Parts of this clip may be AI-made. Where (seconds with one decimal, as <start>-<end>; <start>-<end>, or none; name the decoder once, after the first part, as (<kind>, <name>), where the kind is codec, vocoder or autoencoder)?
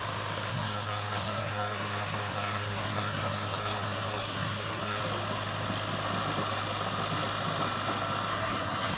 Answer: 0.5-5.0 (codec, SNAC); 8.3-9.0